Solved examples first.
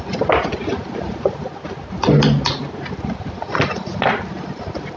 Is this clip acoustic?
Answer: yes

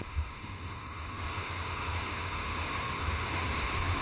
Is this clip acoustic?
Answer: no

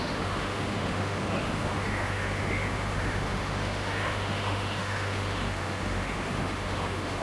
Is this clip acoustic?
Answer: no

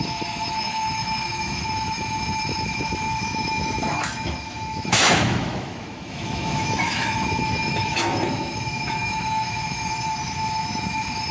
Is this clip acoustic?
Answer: no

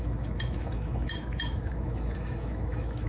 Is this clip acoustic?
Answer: no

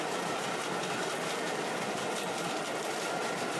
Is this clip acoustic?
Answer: yes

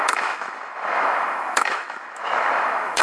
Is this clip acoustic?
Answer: no